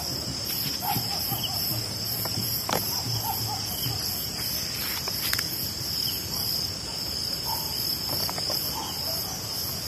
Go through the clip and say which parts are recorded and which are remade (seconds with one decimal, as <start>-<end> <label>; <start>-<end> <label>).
0.0-1.1 recorded; 1.1-3.2 remade; 3.2-9.9 recorded